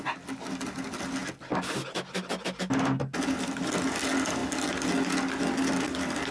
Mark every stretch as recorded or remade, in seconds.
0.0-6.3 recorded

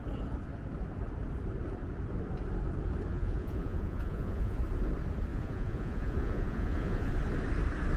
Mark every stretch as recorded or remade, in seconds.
0.0-3.1 recorded; 3.1-4.6 remade; 4.6-5.3 recorded; 5.3-7.1 remade; 7.1-8.0 recorded